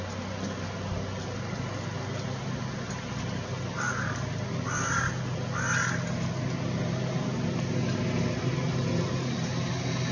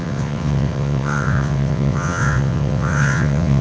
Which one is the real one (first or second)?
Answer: first